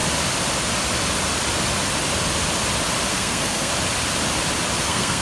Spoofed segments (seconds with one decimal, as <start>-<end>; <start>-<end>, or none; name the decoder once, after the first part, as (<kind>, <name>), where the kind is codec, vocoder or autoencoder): 3.1-3.7 (codec, SNAC); 4.8-5.2